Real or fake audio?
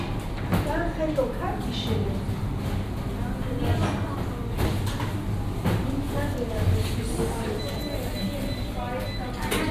real